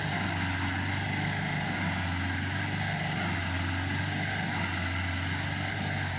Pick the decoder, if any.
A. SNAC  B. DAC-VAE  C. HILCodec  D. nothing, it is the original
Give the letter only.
D